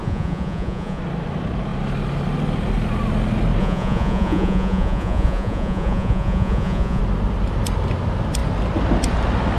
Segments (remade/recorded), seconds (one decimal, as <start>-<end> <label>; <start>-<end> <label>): 0.0-1.0 remade; 1.0-3.6 recorded; 3.6-7.0 remade; 7.0-9.6 recorded